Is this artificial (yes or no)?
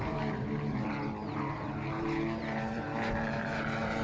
yes